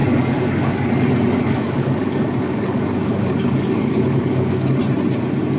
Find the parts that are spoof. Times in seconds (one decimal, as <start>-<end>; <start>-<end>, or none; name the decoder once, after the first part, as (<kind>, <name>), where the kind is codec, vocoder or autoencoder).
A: 0.0-0.9 (codec, DAC); 1.4-4.8